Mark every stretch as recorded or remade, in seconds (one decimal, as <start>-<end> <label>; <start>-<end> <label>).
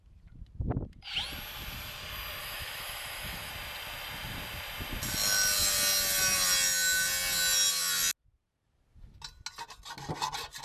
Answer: 0.0-2.4 recorded; 2.4-3.5 remade; 3.5-10.6 recorded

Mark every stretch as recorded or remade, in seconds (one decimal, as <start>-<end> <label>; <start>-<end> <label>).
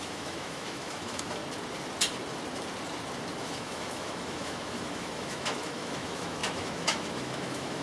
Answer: 0.0-1.4 remade; 1.4-3.4 recorded; 3.4-7.8 remade